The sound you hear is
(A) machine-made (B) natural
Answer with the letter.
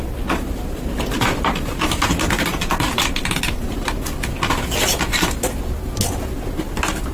B